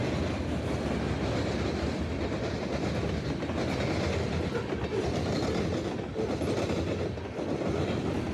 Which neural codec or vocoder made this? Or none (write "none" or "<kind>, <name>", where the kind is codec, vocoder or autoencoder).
none